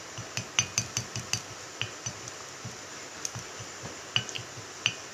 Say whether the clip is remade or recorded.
recorded